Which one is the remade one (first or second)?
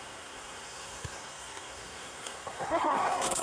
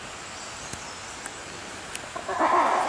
first